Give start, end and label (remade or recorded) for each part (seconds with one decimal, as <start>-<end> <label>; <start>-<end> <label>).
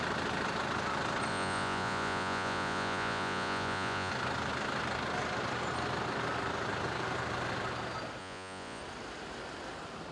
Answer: 0.0-1.3 recorded; 1.3-4.1 remade; 4.1-8.2 recorded; 8.2-8.8 remade; 8.8-10.1 recorded